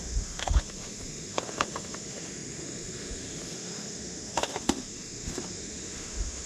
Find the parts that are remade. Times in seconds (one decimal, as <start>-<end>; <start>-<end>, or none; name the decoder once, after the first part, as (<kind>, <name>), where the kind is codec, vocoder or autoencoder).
0.0-6.5 (autoencoder, DAC-VAE)